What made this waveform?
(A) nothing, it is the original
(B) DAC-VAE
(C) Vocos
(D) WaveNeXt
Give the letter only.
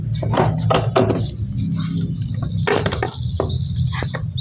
A